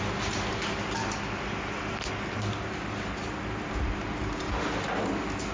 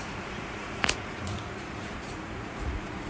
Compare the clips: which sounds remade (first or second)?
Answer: second